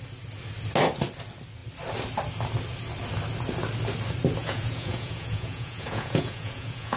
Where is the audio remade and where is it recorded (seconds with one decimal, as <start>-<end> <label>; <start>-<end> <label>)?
0.0-4.4 recorded; 4.4-7.0 remade